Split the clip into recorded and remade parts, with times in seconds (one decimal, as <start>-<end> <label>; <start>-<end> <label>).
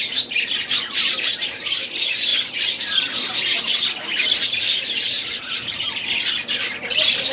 0.0-2.3 remade; 2.3-6.6 recorded; 6.6-7.3 remade